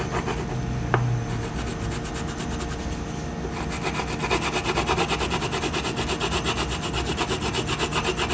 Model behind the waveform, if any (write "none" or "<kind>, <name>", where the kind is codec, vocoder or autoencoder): none